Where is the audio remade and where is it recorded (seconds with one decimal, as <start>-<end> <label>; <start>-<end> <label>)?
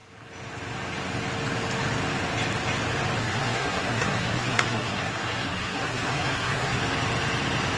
0.0-3.2 recorded; 3.2-6.8 remade; 6.8-7.8 recorded